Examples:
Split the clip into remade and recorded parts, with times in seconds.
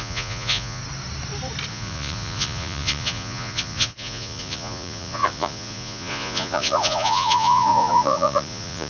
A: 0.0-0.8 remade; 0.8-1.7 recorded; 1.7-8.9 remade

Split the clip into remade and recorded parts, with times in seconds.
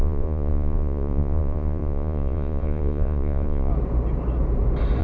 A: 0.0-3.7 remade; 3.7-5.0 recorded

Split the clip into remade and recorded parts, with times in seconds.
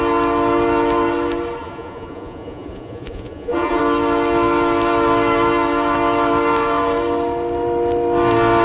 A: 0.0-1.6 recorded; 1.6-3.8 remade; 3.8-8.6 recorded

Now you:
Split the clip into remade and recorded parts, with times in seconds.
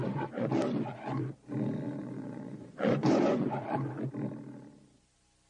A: 0.0-0.5 remade; 0.5-2.0 recorded; 2.0-3.8 remade; 3.8-5.5 recorded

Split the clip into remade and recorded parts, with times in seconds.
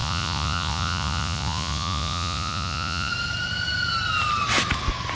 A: 0.0-3.1 remade; 3.1-5.1 recorded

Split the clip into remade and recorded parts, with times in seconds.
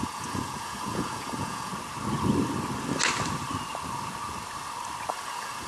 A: 0.0-1.7 remade; 1.7-5.1 recorded; 5.1-5.7 remade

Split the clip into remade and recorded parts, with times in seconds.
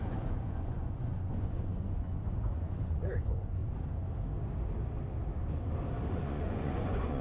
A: 0.0-3.6 remade; 3.6-6.1 recorded; 6.1-7.2 remade